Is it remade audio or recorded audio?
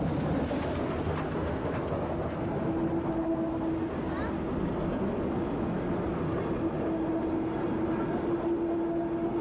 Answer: recorded